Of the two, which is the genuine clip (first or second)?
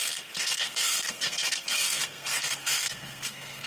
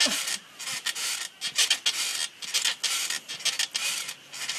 second